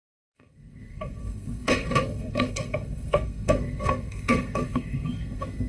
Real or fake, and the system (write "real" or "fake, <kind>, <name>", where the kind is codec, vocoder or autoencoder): fake, codec, SNAC